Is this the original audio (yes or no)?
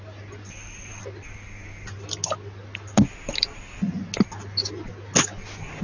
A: yes